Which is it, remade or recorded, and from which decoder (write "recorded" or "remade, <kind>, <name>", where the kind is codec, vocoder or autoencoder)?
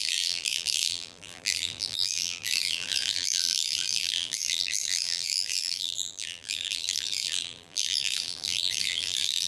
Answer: remade, vocoder, BigVGAN v2